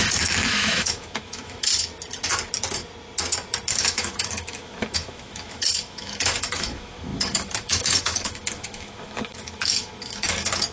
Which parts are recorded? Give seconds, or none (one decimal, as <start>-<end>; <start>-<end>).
1.7-3.7